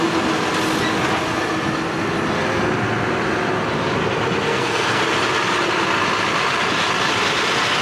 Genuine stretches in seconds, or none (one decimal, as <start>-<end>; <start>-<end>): 0.0-4.5; 5.0-7.8